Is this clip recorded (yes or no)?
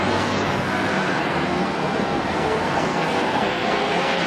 no